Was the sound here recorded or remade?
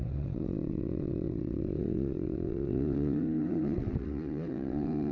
remade